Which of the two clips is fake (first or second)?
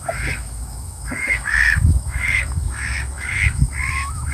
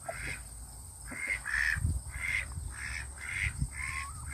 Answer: first